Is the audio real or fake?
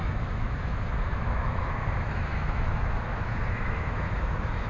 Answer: fake